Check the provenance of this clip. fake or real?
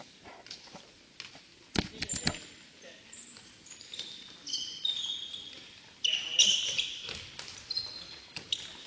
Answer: real